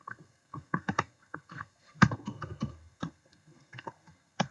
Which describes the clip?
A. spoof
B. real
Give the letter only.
A